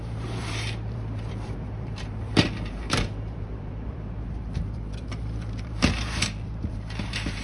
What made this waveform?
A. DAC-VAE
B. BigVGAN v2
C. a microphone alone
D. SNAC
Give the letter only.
B